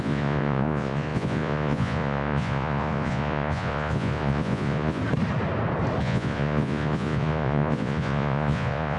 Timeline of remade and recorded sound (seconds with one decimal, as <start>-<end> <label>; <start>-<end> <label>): 0.0-5.0 remade; 5.0-6.0 recorded; 6.0-9.0 remade